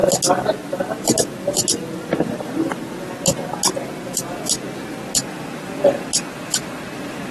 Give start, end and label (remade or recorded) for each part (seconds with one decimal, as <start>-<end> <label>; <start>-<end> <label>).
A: 0.0-7.3 recorded